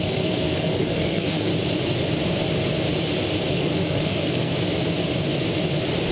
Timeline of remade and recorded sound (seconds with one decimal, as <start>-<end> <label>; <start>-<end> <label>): 0.0-1.5 remade; 1.5-3.5 recorded; 3.5-4.5 remade; 4.5-6.1 recorded

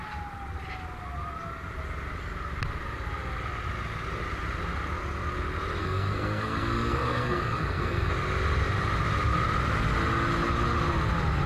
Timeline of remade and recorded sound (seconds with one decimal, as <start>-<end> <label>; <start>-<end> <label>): 0.0-5.8 recorded; 5.8-8.1 remade; 8.1-11.5 recorded